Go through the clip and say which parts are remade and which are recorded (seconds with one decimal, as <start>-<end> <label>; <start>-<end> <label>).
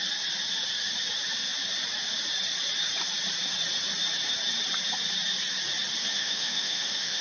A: 0.0-6.0 recorded; 6.0-7.2 remade